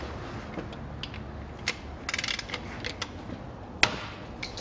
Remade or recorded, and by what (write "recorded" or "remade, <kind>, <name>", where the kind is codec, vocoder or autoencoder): recorded